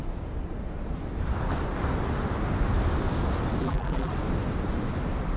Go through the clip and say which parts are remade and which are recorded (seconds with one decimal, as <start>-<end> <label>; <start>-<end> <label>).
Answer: 0.0-3.6 recorded; 3.6-4.1 remade; 4.1-5.4 recorded